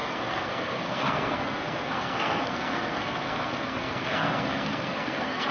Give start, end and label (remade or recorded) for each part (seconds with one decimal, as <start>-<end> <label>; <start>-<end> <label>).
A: 0.0-5.5 remade